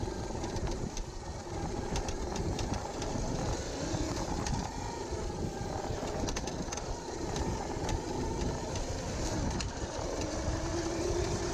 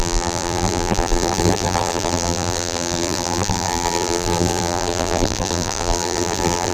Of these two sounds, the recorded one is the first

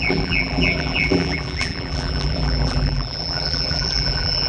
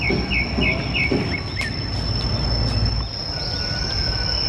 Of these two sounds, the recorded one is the second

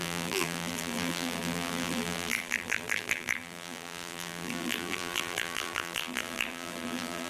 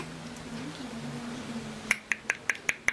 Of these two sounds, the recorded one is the second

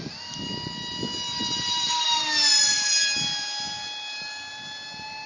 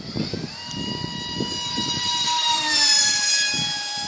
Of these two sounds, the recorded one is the first